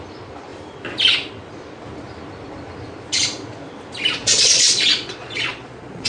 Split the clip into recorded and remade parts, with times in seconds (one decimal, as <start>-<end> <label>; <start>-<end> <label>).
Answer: 0.0-4.2 recorded; 4.2-6.1 remade